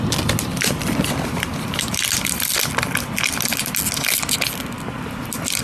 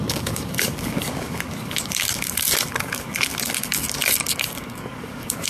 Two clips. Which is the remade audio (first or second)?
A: second